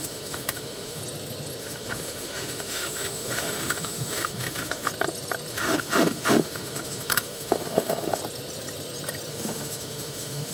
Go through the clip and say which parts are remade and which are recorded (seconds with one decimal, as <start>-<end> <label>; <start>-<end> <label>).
0.0-1.0 remade; 1.0-1.6 recorded; 1.6-4.9 remade; 4.9-5.5 recorded; 5.5-8.2 remade; 8.2-9.3 recorded; 9.3-10.5 remade